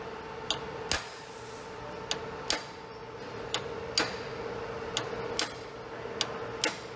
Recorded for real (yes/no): yes